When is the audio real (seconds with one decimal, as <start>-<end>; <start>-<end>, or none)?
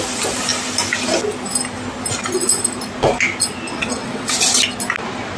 0.0-3.7; 4.3-5.4